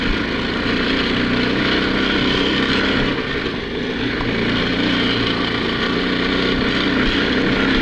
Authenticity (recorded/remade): recorded